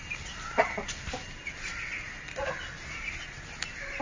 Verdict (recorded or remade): recorded